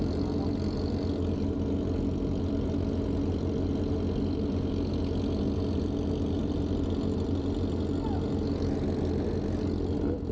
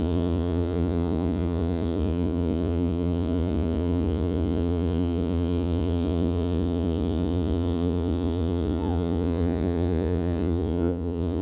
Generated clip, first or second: second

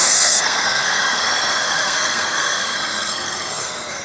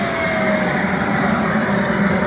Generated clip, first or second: first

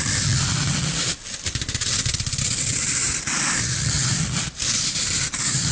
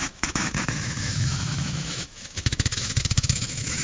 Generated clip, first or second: second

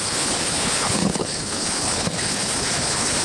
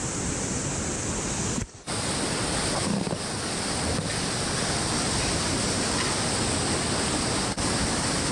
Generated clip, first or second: first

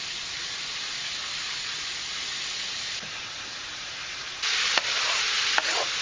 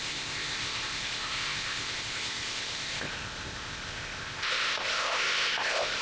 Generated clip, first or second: second